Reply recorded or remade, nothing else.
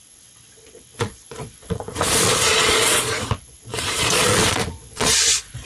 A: remade